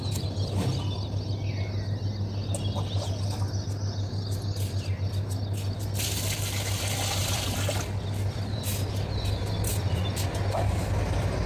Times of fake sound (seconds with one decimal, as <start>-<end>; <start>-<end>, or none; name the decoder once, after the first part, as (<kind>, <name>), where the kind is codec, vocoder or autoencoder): 7.2-8.9 (vocoder, BigVGAN v2)